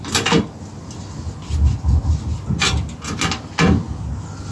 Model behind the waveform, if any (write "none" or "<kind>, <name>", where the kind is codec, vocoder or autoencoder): none